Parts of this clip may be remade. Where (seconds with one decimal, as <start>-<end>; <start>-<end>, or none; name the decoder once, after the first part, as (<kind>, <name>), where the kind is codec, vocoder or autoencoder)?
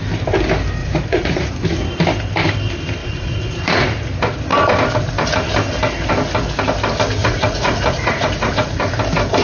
0.8-1.5 (vocoder, Vocos); 3.0-4.1; 7.2-8.7